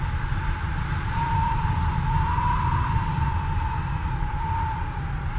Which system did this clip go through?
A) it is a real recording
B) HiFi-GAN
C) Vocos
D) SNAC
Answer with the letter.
A